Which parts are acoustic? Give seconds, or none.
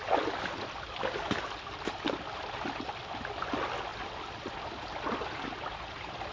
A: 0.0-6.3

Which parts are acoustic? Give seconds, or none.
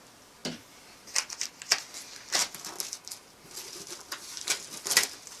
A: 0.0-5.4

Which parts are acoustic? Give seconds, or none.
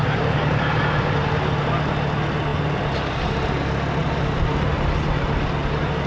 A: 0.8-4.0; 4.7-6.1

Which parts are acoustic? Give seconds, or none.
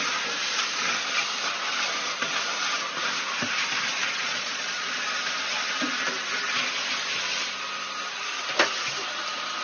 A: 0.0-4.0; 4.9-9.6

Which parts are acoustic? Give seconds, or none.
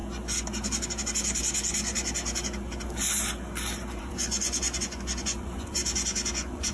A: 0.0-4.0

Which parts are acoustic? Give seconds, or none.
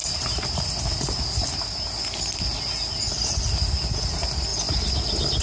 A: 0.6-5.4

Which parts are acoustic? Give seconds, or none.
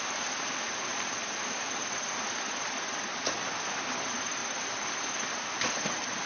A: 0.0-6.3